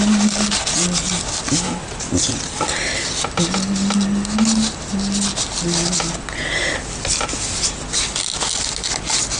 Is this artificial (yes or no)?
no